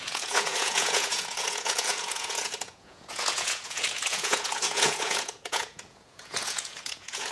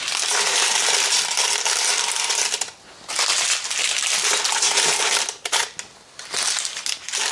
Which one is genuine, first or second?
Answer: second